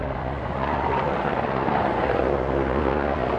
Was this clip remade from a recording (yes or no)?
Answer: yes